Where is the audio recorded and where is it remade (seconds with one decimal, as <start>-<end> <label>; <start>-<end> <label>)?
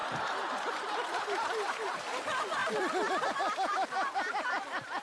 0.0-2.1 remade; 2.1-5.0 recorded